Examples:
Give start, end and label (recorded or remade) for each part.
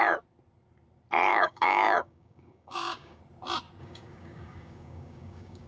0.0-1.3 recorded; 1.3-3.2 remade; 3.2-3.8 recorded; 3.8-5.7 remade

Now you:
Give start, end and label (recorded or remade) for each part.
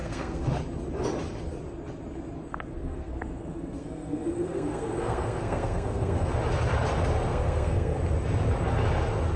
0.0-0.5 remade; 0.5-2.5 recorded; 2.5-6.3 remade; 6.3-7.3 recorded; 7.3-8.0 remade; 8.0-9.4 recorded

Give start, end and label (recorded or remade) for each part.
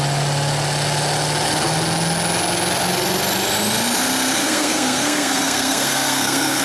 0.0-4.4 recorded; 4.4-6.6 remade